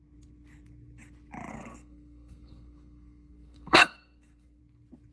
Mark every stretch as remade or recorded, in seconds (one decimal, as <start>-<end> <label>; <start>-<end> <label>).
0.0-1.5 recorded; 1.5-4.6 remade; 4.6-5.1 recorded